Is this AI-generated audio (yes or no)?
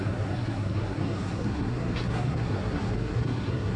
yes